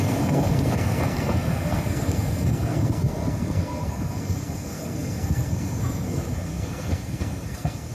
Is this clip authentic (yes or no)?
no